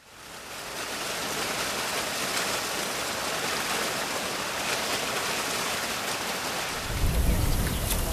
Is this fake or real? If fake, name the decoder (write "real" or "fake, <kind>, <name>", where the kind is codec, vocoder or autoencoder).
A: real